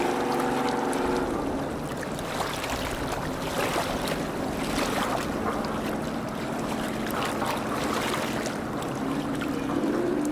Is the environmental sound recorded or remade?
recorded